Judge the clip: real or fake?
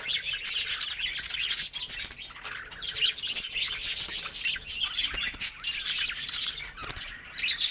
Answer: real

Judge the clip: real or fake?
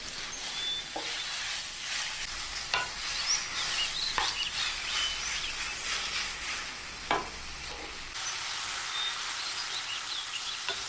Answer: real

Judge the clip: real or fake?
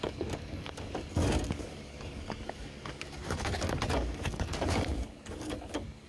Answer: fake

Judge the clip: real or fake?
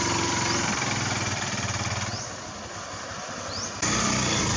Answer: real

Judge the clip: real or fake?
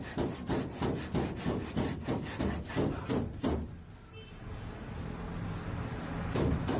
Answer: real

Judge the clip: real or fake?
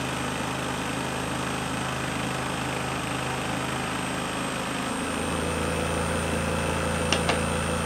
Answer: real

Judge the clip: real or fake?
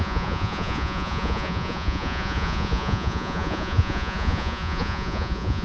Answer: fake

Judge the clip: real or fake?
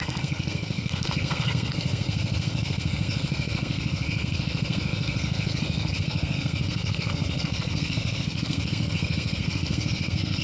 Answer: fake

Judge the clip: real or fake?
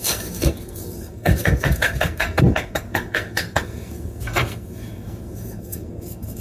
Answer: fake